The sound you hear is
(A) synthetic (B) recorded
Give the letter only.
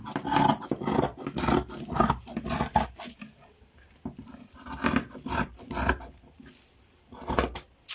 B